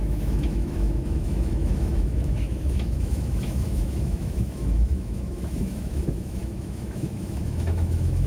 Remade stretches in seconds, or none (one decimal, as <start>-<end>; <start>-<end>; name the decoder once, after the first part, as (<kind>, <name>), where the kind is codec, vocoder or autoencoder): 0.0-8.3 (autoencoder, DAC-VAE)